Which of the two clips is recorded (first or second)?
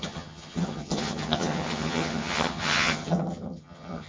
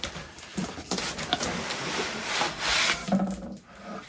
second